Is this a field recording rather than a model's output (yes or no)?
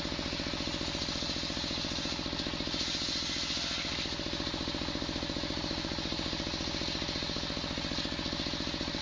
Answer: yes